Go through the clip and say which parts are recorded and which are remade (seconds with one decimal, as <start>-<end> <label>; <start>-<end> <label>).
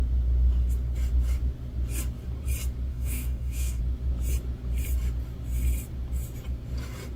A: 0.0-2.9 recorded; 2.9-3.8 remade; 3.8-7.2 recorded